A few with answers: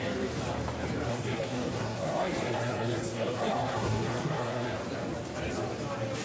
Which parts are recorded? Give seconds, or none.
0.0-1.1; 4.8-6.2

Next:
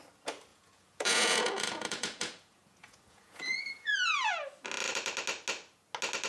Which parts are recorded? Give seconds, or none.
0.0-0.5; 4.3-6.3